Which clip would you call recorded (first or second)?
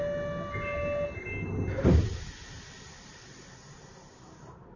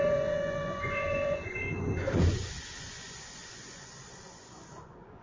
first